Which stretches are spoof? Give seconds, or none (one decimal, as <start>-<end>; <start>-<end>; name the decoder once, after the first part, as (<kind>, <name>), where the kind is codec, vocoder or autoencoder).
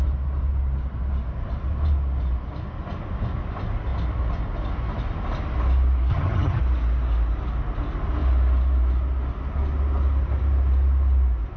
6.1-6.6 (vocoder, HiFi-GAN)